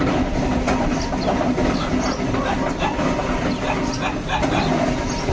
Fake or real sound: real